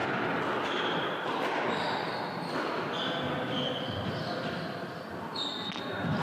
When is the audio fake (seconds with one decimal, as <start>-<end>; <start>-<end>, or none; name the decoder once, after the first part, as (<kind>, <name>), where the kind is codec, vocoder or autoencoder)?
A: none